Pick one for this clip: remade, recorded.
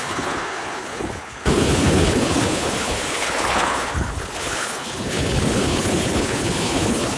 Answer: remade